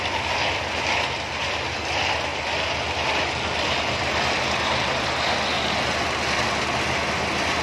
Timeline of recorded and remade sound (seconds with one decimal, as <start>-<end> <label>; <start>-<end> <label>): 0.0-2.3 recorded; 2.3-5.3 remade; 5.3-7.6 recorded